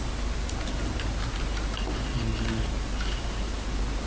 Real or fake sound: real